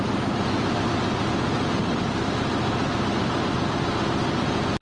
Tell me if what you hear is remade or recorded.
recorded